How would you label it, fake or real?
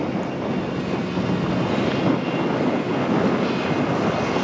real